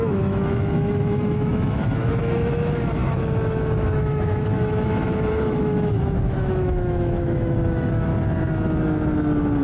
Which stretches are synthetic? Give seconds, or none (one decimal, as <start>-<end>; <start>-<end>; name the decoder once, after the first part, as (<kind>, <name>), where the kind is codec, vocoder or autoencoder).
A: 0.0-8.1 (autoencoder, DAC-VAE)

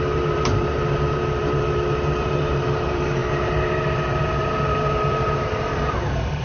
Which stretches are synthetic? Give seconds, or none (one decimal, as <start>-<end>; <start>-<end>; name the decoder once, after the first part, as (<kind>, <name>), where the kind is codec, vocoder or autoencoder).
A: 0.0-6.4 (vocoder, BigVGAN v2)

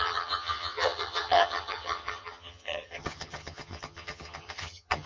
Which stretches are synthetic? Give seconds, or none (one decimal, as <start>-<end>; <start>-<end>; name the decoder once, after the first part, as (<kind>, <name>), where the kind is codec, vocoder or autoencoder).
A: 0.0-5.1 (vocoder, HiFi-GAN)

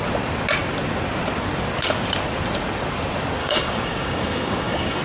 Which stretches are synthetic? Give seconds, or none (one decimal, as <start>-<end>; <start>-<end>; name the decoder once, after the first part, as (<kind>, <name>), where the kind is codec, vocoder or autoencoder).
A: 3.4-5.0 (codec, DAC)